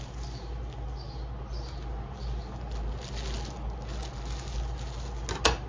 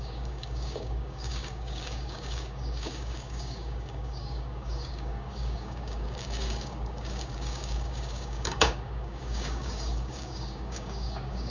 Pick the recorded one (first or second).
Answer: first